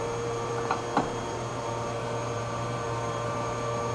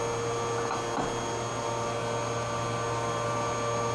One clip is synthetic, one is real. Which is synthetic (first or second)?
first